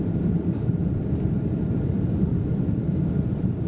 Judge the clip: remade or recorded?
remade